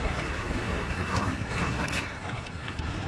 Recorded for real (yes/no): no